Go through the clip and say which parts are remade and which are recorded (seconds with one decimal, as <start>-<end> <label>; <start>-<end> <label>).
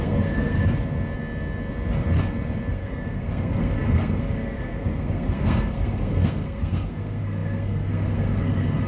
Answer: 0.0-0.6 remade; 0.6-2.7 recorded; 2.7-8.9 remade